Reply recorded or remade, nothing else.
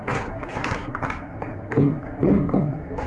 remade